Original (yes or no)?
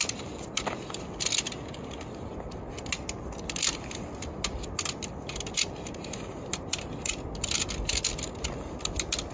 yes